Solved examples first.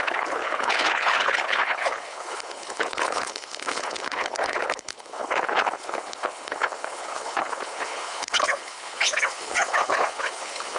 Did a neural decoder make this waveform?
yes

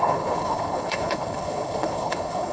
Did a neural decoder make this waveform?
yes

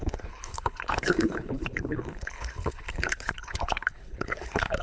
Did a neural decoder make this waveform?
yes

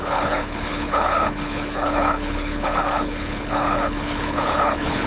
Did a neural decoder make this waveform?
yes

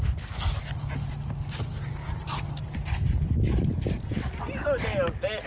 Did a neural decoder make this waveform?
no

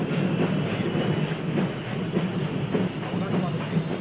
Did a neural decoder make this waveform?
no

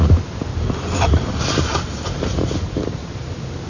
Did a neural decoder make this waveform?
no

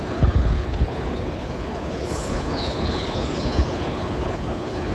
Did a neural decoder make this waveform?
yes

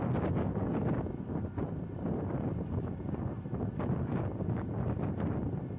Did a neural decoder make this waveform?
no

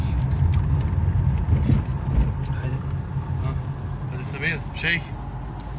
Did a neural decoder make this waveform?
no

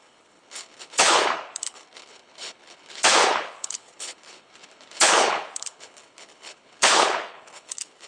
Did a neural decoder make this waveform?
yes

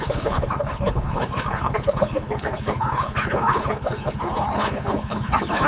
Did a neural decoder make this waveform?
yes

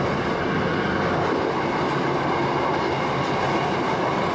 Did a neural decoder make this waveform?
no